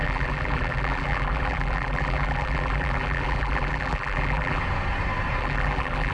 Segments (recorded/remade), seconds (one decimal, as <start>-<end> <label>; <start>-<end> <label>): 0.0-4.6 remade; 4.6-5.4 recorded; 5.4-6.1 remade